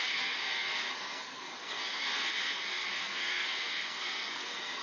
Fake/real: fake